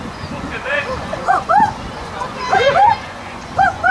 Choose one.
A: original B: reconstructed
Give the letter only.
B